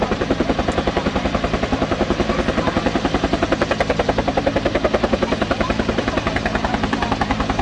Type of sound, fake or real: fake